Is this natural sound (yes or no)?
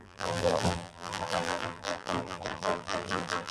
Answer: no